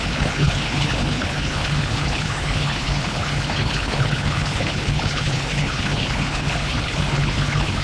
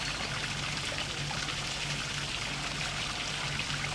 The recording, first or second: second